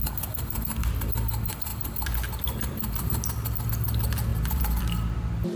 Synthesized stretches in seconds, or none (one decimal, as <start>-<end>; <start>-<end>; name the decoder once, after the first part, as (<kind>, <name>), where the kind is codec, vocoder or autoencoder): none